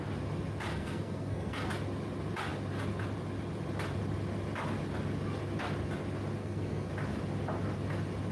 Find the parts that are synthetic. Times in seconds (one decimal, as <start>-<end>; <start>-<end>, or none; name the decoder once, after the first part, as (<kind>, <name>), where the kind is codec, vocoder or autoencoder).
0.7-1.7 (codec, SNAC); 6.4-6.9